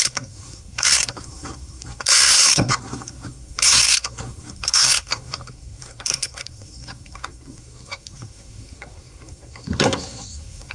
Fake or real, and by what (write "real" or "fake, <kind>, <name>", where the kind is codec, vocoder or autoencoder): fake, codec, SNAC